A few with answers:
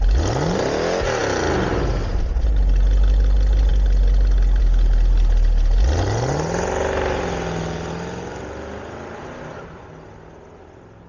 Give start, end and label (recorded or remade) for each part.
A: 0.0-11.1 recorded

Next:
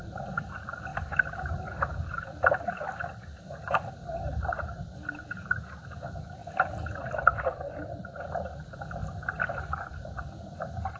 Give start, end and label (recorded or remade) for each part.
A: 0.0-9.0 remade; 9.0-10.3 recorded; 10.3-11.0 remade

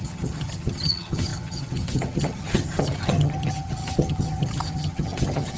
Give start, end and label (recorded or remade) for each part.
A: 0.0-5.6 remade

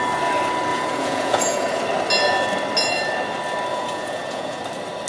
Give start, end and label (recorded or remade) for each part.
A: 0.0-0.7 recorded; 0.7-1.8 remade; 1.8-3.7 recorded; 3.7-4.6 remade; 4.6-5.1 recorded

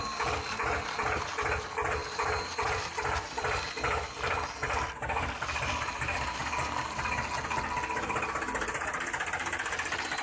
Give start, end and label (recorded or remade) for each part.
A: 0.0-2.0 recorded; 2.0-6.4 remade; 6.4-10.2 recorded